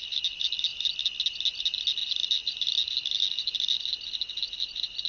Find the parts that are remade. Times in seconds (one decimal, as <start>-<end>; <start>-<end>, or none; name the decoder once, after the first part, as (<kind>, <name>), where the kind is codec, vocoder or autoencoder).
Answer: none